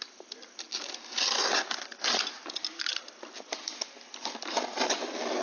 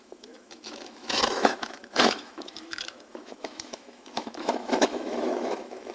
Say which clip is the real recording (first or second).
first